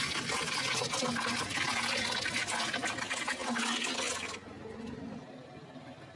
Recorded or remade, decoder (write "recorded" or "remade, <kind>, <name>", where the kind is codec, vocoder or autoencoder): recorded